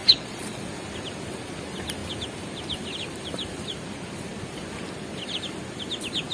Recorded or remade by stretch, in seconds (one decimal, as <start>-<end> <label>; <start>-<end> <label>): 0.0-0.6 remade; 0.6-6.3 recorded

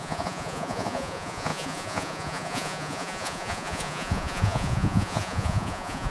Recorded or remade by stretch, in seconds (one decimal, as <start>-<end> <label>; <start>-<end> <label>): 0.0-6.1 remade

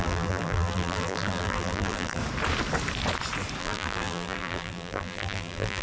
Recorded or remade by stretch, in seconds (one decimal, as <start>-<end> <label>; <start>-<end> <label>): 0.0-2.2 remade; 2.2-3.6 recorded; 3.6-5.8 remade